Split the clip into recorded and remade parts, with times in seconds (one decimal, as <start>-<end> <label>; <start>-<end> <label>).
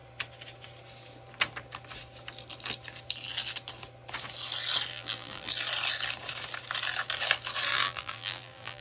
0.0-4.9 recorded; 4.9-5.5 remade; 5.5-7.7 recorded; 7.7-8.8 remade